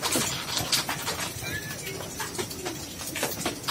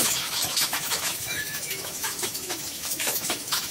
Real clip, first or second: first